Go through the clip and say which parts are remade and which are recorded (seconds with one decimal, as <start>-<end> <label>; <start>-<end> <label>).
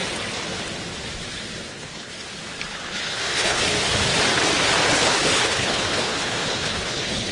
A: 0.0-1.7 recorded; 1.7-2.1 remade; 2.1-2.7 recorded; 2.7-3.6 remade; 3.6-4.9 recorded; 4.9-7.3 remade